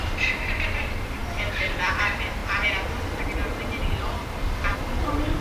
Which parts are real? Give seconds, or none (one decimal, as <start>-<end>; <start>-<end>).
none